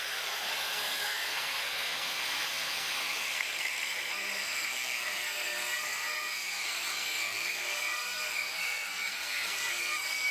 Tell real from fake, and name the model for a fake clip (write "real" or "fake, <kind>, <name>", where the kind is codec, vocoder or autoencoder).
fake, codec, SNAC